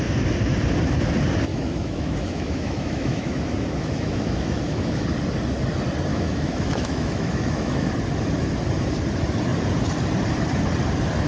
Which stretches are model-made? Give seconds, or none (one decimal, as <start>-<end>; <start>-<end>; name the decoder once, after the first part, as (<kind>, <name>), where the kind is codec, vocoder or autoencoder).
1.5-5.0 (autoencoder, DAC-VAE); 6.1-7.9